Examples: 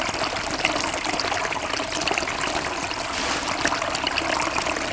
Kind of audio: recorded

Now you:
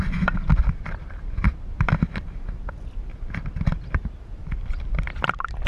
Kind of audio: remade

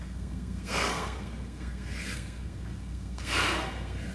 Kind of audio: remade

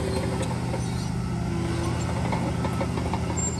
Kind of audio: recorded